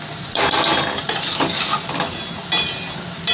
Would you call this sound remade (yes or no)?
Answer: no